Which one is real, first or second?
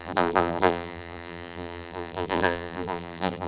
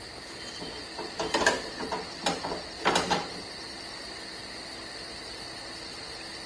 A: second